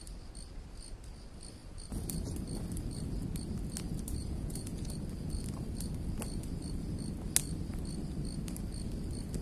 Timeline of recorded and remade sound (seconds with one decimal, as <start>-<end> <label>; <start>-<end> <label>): 0.0-4.2 recorded; 4.2-4.9 remade; 4.9-9.4 recorded